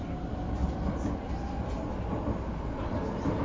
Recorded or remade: recorded